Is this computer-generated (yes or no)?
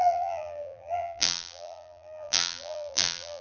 yes